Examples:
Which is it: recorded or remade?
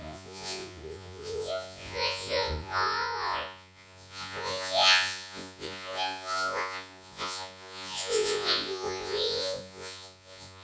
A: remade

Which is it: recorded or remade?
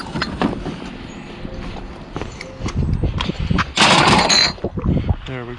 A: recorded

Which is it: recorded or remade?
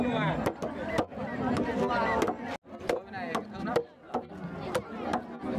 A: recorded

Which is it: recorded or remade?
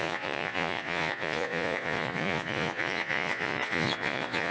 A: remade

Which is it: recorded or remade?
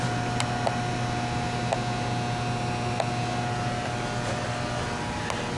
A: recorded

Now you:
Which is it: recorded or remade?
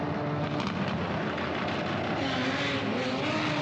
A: recorded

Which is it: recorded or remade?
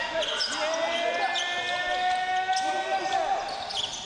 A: recorded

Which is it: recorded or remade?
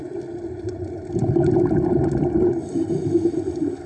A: recorded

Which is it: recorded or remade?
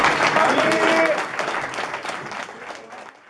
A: recorded